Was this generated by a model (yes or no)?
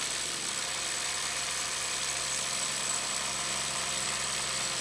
no